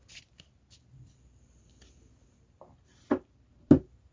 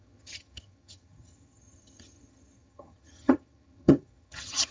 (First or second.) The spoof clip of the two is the second